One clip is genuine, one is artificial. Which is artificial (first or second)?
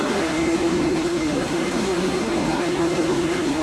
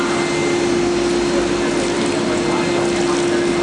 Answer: first